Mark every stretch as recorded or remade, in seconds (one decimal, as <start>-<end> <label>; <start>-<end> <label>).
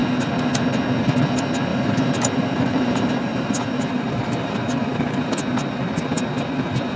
0.0-1.7 recorded; 1.7-5.2 remade; 5.2-7.0 recorded